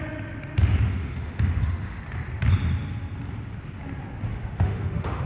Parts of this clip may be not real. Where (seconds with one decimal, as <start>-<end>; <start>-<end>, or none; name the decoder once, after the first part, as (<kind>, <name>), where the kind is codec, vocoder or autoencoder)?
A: 0.9-2.0 (autoencoder, DAC-VAE); 4.3-5.3